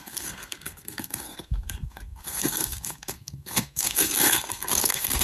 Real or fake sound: fake